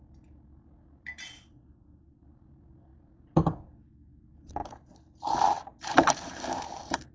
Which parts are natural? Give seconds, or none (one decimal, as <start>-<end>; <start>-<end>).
0.0-7.1